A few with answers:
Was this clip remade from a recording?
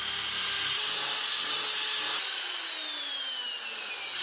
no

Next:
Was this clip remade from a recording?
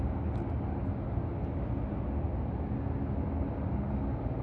no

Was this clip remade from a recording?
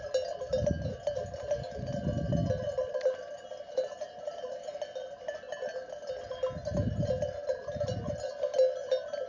no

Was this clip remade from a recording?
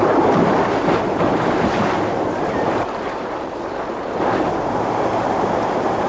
yes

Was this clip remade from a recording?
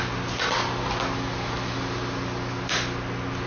no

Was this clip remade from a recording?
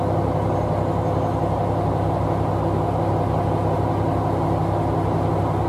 no